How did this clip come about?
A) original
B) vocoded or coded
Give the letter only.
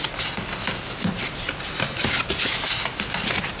A